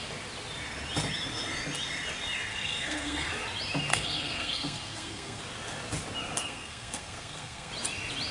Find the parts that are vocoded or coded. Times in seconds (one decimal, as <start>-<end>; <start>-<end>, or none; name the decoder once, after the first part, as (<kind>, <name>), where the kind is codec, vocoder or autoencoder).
2.5-3.3 (codec, SNAC); 3.9-5.4; 6.4-7.7